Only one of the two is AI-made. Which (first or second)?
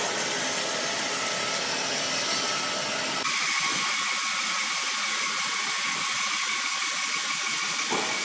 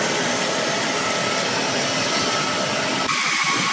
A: second